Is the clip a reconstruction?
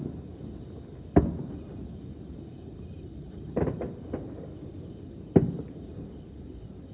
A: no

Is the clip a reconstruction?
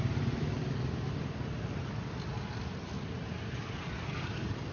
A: no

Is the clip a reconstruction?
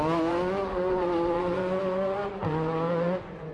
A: yes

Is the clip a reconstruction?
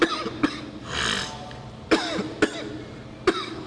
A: no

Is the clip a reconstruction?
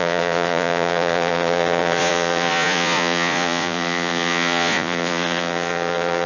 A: yes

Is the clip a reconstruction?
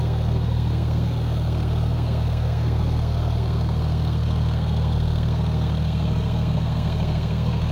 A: yes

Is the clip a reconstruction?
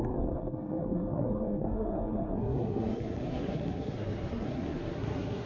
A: yes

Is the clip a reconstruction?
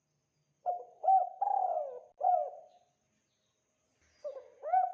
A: no